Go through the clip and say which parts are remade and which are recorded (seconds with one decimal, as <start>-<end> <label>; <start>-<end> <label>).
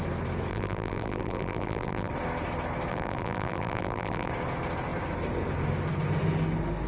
0.0-0.5 recorded; 0.5-2.1 remade; 2.1-2.9 recorded; 2.9-4.3 remade; 4.3-6.9 recorded